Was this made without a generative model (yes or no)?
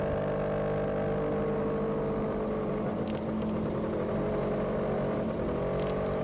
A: yes